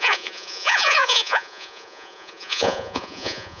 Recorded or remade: remade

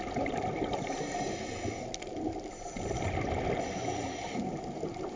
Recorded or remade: recorded